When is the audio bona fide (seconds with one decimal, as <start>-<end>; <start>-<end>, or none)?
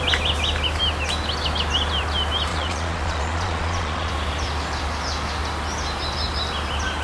0.0-2.5; 4.1-7.0